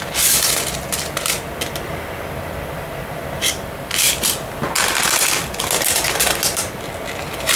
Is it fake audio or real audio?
real